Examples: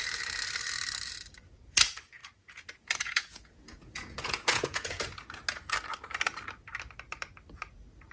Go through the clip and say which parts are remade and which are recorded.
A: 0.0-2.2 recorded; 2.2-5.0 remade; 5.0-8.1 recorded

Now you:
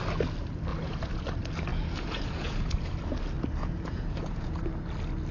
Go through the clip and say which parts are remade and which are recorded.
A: 0.0-0.7 recorded; 0.7-1.2 remade; 1.2-1.7 recorded; 1.7-2.9 remade; 2.9-3.6 recorded; 3.6-4.7 remade; 4.7-5.3 recorded